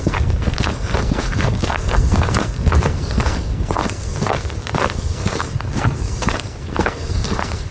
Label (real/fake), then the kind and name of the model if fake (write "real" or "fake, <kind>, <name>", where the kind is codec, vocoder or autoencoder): fake, codec, SNAC